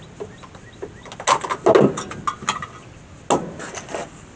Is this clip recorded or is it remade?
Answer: recorded